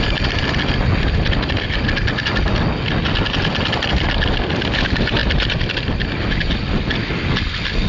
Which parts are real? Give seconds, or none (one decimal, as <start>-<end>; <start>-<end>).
0.0-7.9